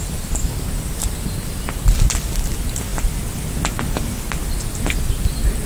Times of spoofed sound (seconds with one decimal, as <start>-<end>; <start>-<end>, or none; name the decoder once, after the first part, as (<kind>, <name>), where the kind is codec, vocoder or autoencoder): none